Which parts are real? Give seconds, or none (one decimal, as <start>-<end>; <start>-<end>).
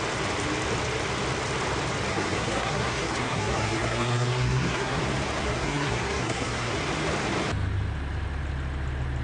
0.0-2.1; 5.0-5.4; 6.7-9.2